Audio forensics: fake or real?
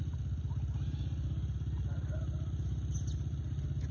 real